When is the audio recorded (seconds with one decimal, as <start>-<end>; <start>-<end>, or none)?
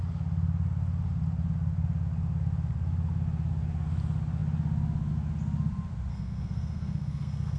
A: 0.0-6.1